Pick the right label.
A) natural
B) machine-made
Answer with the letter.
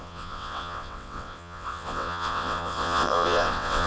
B